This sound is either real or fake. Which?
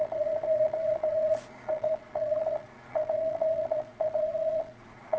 fake